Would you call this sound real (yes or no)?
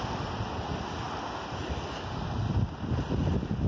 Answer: yes